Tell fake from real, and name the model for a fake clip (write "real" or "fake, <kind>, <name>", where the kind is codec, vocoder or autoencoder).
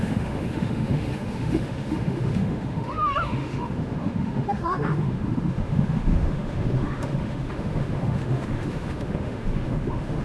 fake, autoencoder, DAC-VAE